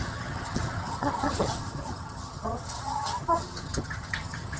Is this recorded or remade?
remade